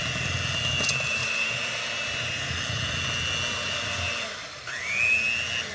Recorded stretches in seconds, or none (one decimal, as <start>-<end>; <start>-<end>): 0.0-1.2; 1.8-5.7

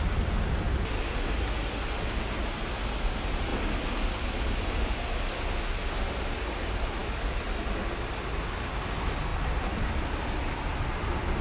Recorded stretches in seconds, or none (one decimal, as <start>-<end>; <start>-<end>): 0.0-7.0; 8.0-9.3

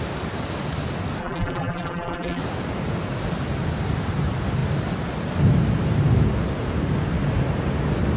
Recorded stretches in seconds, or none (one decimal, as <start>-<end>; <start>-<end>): 0.0-1.2; 2.4-8.2